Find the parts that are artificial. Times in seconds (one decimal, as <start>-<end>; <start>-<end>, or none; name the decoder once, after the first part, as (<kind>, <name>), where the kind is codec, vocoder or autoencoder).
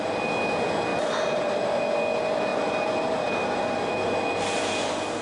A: 0.9-1.8 (vocoder, BigVGAN v2); 2.5-3.6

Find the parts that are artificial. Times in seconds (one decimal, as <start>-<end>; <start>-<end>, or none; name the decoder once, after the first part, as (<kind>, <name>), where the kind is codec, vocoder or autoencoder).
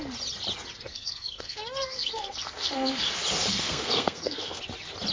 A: 0.9-3.1 (codec, SNAC); 3.5-4.6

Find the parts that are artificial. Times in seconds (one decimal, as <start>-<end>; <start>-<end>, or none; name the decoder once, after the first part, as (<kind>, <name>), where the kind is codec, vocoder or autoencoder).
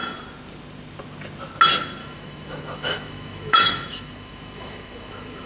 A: 2.0-5.5 (autoencoder, DAC-VAE)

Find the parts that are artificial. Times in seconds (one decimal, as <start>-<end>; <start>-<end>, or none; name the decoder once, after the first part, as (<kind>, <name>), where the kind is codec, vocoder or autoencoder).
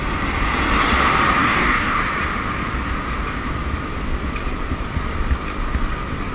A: 1.4-2.0 (codec, DAC)